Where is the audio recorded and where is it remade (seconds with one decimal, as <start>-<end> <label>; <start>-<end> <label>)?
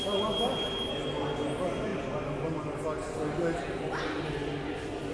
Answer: 0.0-5.1 recorded